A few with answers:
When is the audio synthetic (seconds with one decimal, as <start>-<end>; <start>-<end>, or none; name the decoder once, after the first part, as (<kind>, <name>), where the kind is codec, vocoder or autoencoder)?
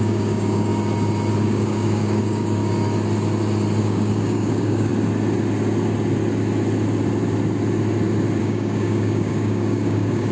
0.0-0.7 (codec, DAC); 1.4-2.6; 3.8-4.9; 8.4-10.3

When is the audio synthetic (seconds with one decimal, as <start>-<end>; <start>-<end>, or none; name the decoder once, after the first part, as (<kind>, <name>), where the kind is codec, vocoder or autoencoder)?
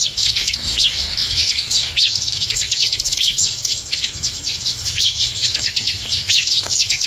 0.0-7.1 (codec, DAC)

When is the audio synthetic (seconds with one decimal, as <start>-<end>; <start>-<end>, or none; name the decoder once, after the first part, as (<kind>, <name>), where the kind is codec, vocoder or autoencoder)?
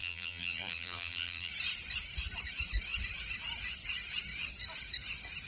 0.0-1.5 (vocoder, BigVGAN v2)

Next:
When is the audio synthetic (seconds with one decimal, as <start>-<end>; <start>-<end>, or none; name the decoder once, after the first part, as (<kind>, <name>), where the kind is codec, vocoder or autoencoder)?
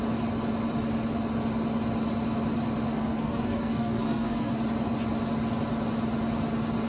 3.0-4.5 (codec, SNAC)